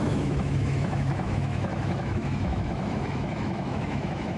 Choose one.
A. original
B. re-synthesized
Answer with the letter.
B